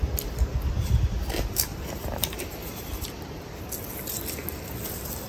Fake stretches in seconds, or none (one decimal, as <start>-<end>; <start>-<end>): 1.7-3.7